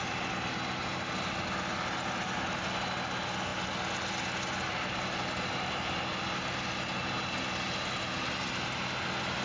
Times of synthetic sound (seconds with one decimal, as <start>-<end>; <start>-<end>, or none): none